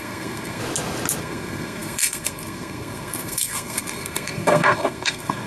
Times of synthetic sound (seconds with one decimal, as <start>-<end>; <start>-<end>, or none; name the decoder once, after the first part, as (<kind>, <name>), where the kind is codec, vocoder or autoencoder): 0.0-0.6 (codec, SNAC); 1.2-5.5